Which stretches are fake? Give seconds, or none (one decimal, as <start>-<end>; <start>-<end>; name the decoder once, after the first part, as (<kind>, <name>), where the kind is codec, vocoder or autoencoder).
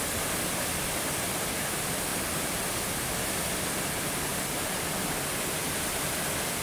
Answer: 2.1-3.5 (vocoder, BigVGAN v2); 4.3-4.9; 5.6-6.6